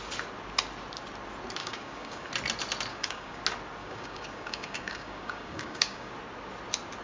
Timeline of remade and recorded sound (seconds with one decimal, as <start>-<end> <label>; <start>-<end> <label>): 0.0-1.6 recorded; 1.6-2.3 remade; 2.3-2.9 recorded; 2.9-3.4 remade; 3.4-3.8 recorded; 3.8-6.1 remade; 6.1-7.0 recorded